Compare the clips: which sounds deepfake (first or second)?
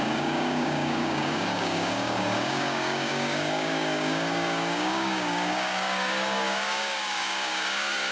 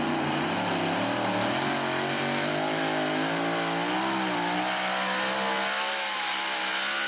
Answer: first